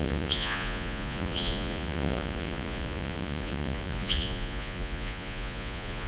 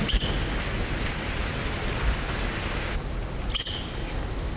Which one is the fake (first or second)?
first